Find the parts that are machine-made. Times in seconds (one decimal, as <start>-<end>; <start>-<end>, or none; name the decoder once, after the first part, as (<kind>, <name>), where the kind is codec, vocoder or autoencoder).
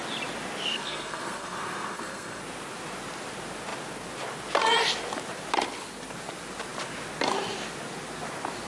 0.7-2.4 (codec, SNAC)